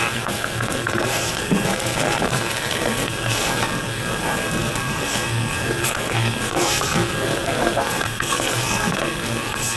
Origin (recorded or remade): remade